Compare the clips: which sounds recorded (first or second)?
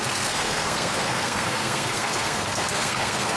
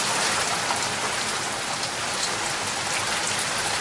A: second